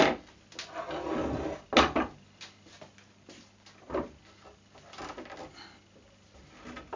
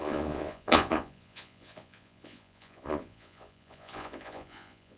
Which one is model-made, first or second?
second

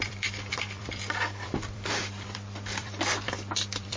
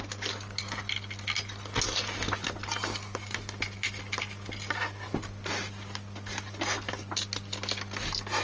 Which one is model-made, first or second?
first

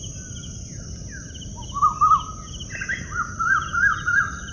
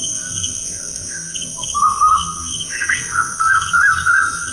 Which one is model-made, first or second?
second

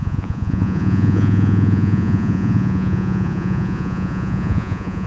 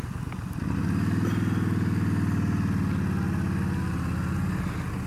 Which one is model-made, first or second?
first